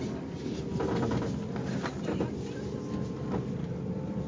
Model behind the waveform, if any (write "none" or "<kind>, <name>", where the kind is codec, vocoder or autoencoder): none